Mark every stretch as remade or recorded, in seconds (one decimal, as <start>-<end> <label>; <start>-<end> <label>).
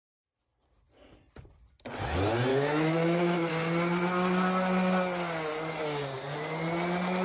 0.0-2.5 recorded; 2.5-3.5 remade; 3.5-7.2 recorded